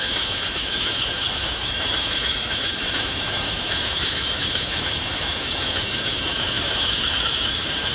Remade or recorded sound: remade